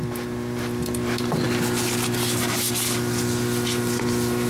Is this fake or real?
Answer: fake